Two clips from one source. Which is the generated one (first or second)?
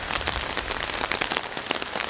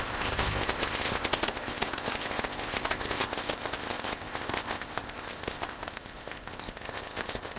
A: second